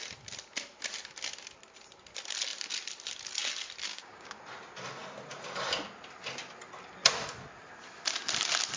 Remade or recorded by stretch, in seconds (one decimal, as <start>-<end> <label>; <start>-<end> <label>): 0.0-3.9 recorded; 3.9-4.4 remade; 4.4-8.8 recorded